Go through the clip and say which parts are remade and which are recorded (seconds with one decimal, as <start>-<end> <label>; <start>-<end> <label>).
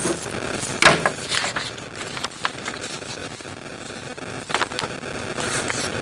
0.0-6.0 recorded